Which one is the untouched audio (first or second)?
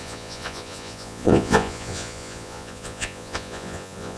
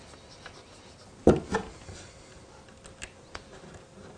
second